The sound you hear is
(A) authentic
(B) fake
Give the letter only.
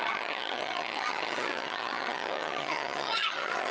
B